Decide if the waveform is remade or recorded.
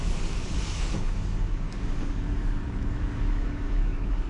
remade